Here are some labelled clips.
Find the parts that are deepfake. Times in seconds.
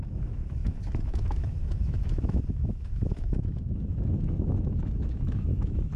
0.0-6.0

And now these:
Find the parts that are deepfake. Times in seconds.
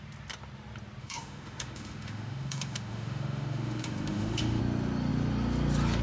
1.0-4.6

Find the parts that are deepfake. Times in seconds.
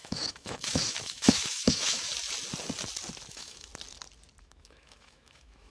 0.0-2.1; 3.3-3.7; 4.4-5.7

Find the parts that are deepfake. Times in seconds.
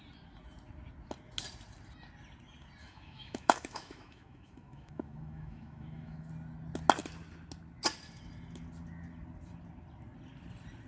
2.8-6.3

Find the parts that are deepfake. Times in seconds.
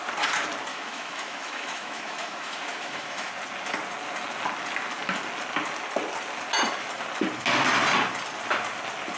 0.7-3.3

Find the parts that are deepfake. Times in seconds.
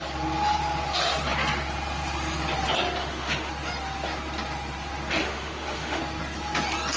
3.0-3.5; 5.2-6.0